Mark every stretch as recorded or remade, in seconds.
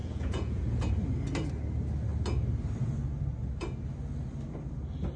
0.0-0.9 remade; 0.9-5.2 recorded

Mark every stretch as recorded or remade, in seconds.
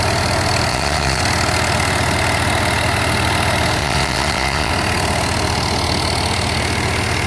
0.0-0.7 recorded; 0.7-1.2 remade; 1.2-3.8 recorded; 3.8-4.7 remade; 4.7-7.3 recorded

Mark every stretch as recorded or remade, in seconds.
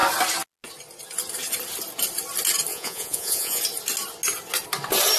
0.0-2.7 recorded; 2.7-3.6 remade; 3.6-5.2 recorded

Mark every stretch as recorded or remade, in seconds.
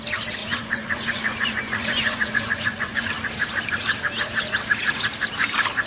0.0-0.4 recorded; 0.4-3.1 remade; 3.1-5.9 recorded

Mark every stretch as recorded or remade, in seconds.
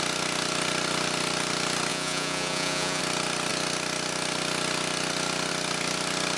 0.0-1.9 recorded; 1.9-3.0 remade; 3.0-6.4 recorded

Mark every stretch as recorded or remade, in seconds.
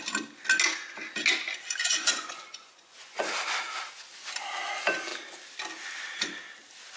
0.0-1.8 recorded; 1.8-3.2 remade; 3.2-7.0 recorded